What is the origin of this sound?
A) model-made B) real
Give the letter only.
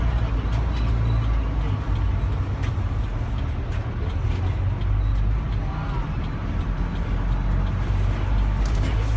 B